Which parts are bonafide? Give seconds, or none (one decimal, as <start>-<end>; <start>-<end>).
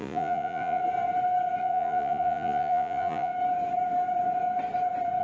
0.8-1.6; 3.3-5.2